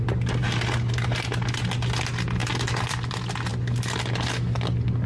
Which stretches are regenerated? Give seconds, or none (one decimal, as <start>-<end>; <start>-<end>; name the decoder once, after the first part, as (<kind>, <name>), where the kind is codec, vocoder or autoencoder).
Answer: 0.4-0.9 (vocoder, BigVGAN v2); 2.4-3.1